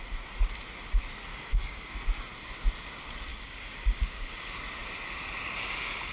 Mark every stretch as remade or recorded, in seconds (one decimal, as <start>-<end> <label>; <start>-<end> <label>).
0.0-1.3 recorded; 1.3-1.9 remade; 1.9-3.3 recorded; 3.3-4.3 remade; 4.3-6.1 recorded